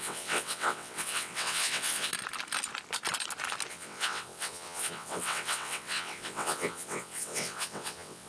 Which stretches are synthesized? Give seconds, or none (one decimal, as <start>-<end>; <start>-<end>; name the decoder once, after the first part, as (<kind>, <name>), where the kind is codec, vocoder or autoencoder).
0.0-2.1 (vocoder, WaveNeXt); 3.7-8.3